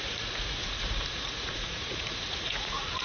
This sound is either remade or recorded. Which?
remade